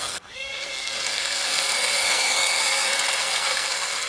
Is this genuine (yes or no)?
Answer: no